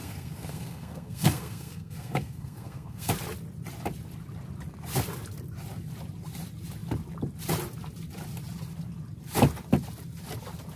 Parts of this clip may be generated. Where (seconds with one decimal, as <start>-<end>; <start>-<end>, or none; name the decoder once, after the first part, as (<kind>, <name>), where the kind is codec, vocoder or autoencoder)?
0.0-3.1 (codec, SNAC)